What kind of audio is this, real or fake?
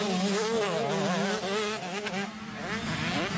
real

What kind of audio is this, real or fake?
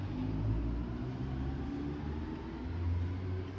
real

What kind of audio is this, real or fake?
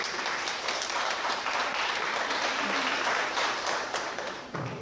fake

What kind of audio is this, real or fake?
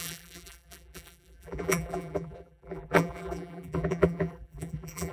fake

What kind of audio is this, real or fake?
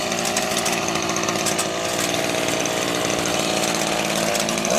real